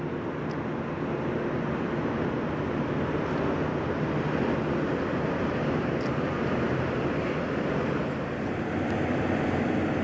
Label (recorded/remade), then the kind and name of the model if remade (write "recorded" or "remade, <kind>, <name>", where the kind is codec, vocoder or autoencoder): recorded